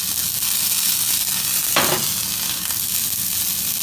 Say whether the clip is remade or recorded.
recorded